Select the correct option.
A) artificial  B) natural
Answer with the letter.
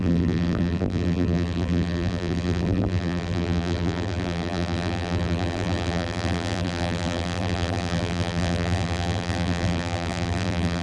A